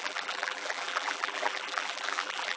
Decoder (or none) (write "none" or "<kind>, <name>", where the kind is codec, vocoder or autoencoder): vocoder, BigVGAN v2